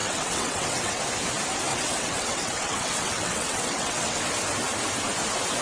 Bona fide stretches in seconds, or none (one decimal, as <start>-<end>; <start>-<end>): 1.0-1.7; 4.2-5.6